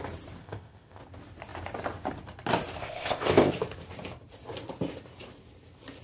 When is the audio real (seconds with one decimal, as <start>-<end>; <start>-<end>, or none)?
0.0-0.4; 1.0-2.8; 3.5-6.0